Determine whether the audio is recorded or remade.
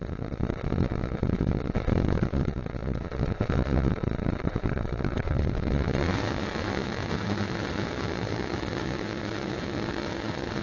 remade